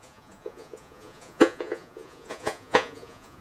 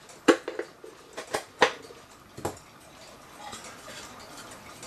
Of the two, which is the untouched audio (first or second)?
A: second